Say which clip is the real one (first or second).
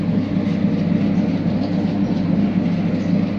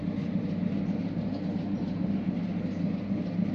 first